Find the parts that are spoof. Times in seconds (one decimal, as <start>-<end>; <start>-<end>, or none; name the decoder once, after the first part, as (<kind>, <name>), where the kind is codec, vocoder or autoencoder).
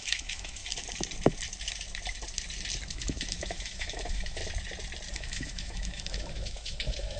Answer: 0.0-0.6 (autoencoder, DAC-VAE); 2.9-4.4; 5.1-7.2